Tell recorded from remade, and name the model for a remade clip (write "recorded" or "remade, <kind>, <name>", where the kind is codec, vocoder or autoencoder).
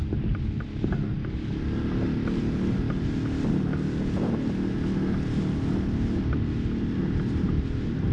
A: recorded